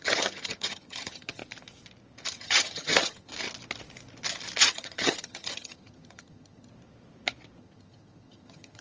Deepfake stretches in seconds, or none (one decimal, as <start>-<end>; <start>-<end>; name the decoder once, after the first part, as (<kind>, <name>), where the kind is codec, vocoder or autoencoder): 0.0-1.4 (vocoder, HiFi-GAN); 2.3-3.3; 4.6-6.7; 7.6-8.8